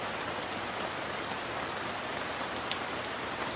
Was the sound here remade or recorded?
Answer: recorded